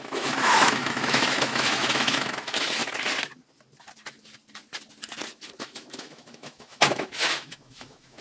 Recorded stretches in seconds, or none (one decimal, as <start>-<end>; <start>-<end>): 2.8-5.6